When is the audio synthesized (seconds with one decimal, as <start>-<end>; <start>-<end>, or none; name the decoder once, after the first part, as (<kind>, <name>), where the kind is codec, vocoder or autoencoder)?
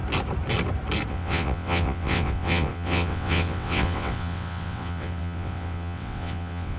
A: 1.1-6.8 (vocoder, WaveNeXt)